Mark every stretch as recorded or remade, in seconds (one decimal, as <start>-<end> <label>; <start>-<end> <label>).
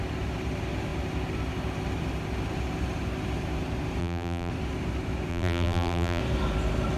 0.0-4.0 recorded; 4.0-4.5 remade; 4.5-5.3 recorded; 5.3-6.2 remade; 6.2-7.0 recorded